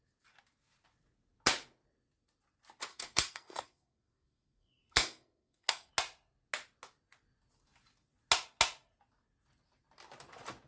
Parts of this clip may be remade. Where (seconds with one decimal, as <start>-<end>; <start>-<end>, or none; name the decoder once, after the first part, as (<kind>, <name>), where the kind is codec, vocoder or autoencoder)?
2.9-5.9 (codec, SNAC)